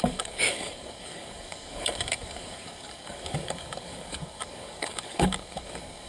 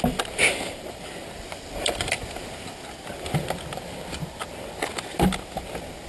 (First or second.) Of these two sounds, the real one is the second